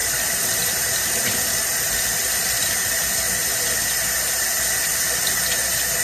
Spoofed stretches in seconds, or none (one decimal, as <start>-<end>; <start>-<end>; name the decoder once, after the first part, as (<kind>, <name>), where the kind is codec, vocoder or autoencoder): 0.0-3.6 (vocoder, BigVGAN v2)